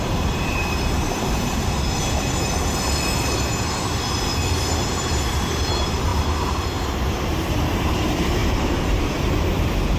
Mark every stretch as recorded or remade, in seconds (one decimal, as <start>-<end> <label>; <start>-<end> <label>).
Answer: 0.0-6.1 remade; 6.1-7.3 recorded; 7.3-10.0 remade